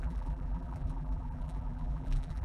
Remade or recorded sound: remade